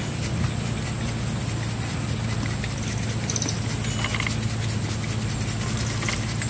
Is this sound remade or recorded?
recorded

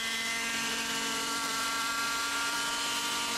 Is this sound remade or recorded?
remade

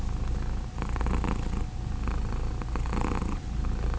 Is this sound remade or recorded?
recorded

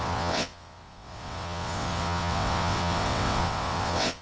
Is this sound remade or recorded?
remade